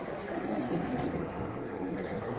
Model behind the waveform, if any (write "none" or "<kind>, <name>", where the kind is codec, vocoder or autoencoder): codec, SNAC